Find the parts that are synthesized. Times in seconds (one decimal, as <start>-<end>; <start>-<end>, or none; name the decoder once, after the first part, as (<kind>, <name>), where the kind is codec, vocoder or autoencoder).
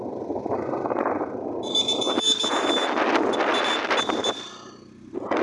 none